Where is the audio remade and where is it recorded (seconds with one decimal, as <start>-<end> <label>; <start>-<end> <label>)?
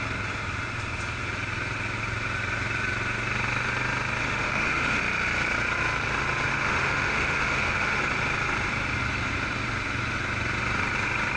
0.0-4.2 recorded; 4.2-5.0 remade; 5.0-6.5 recorded; 6.5-8.0 remade; 8.0-11.4 recorded